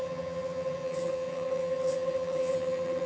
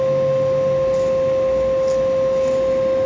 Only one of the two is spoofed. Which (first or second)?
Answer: first